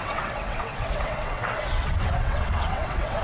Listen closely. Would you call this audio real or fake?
fake